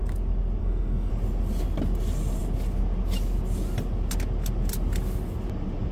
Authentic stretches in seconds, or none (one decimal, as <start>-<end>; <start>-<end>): 0.0-0.6; 1.1-5.9